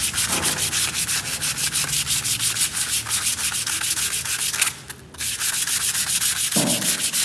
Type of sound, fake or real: real